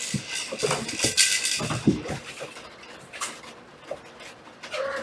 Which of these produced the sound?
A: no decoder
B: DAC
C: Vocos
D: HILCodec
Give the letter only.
A